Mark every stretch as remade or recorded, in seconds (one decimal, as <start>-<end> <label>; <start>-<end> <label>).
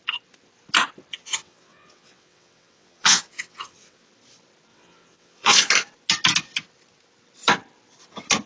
0.0-1.1 recorded; 1.1-4.1 remade; 4.1-4.7 recorded; 4.7-5.6 remade; 5.6-8.5 recorded